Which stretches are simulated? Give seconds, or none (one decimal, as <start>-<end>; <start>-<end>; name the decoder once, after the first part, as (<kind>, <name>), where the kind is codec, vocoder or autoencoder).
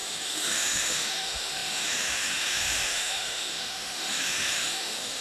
0.0-5.2 (autoencoder, DAC-VAE)